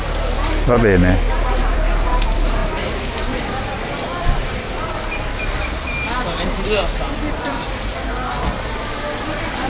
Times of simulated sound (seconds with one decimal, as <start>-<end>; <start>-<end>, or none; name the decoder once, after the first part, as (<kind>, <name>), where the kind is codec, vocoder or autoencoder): 0.0-1.0 (vocoder, BigVGAN v2); 1.6-9.7